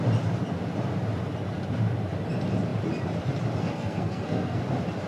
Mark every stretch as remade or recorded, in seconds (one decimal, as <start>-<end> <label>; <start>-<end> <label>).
0.0-3.6 recorded; 3.6-4.6 remade; 4.6-5.1 recorded